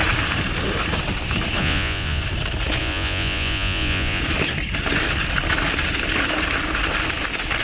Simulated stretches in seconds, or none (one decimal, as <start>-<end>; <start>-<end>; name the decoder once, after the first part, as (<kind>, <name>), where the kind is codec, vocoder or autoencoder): 1.6-2.2 (vocoder, Vocos); 2.8-4.2